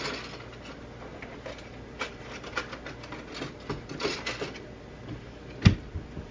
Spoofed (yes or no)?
no